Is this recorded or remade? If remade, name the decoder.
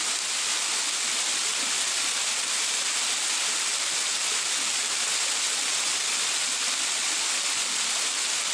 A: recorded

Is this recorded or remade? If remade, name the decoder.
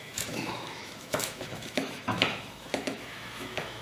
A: remade, autoencoder, DAC-VAE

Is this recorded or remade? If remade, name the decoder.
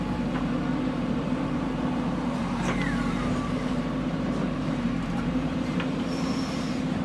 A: remade, vocoder, BigVGAN v2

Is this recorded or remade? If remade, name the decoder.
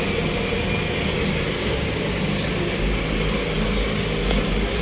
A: recorded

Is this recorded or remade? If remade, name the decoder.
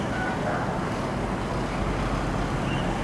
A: recorded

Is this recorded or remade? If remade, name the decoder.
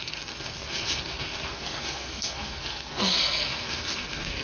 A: remade, codec, SNAC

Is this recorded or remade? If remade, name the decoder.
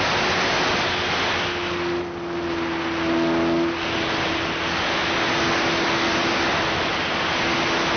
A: recorded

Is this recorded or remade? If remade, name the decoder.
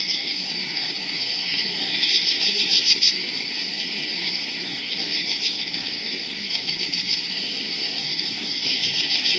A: remade, codec, SNAC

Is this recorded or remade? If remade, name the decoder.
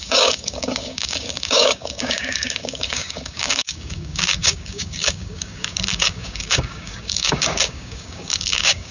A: remade, codec, DAC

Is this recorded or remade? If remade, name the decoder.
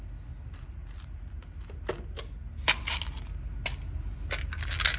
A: recorded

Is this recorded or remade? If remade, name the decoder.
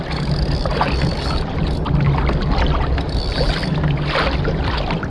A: recorded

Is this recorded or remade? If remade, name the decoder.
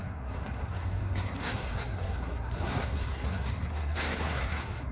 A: remade, codec, SNAC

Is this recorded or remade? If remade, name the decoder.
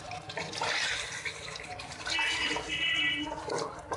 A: recorded